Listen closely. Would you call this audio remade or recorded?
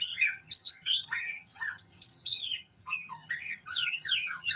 remade